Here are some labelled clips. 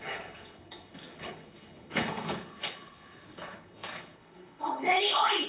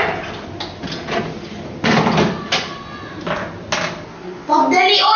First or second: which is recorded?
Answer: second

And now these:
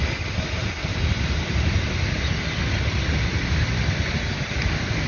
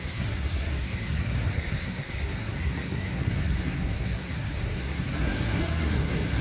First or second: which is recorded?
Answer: first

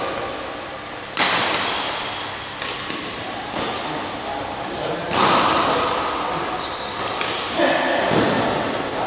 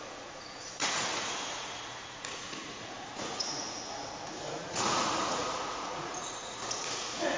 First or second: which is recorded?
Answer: first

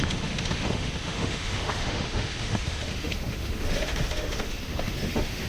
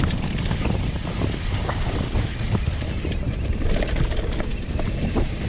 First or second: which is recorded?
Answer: second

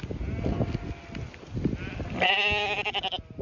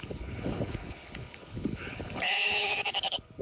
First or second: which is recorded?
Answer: first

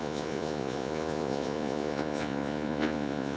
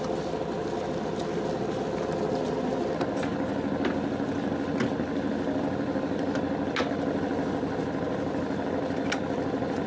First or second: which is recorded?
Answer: second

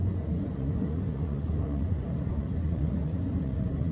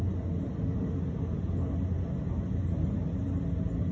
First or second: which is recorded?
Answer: second